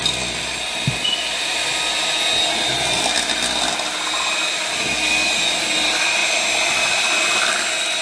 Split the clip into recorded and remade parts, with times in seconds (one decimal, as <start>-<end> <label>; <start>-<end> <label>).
0.0-8.0 recorded